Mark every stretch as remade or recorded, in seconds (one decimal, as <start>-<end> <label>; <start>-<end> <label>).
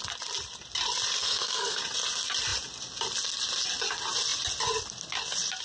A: 0.0-1.2 recorded; 1.2-1.8 remade; 1.8-5.6 recorded